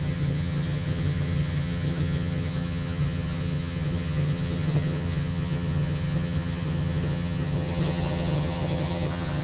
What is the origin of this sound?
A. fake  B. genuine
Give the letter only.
A